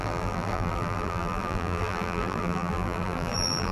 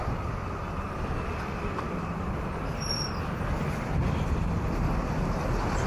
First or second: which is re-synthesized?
first